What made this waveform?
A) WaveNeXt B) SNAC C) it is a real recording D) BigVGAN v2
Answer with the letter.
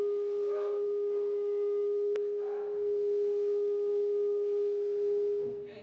B